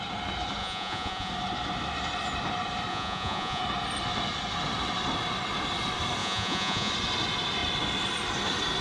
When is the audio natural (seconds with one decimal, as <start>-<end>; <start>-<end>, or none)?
0.0-0.6; 1.3-2.9; 3.6-6.2; 6.9-8.8